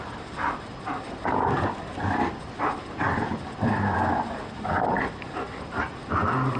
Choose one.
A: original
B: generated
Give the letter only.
A